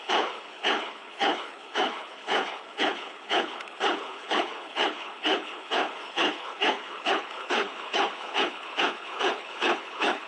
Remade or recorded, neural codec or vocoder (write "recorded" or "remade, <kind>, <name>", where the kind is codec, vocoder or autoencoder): remade, codec, HILCodec